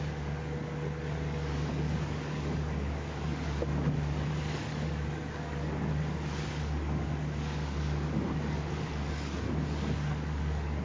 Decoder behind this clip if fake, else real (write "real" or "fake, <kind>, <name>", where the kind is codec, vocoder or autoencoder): fake, codec, DAC